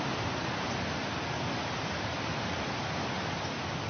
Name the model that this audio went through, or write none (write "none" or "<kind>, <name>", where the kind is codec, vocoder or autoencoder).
none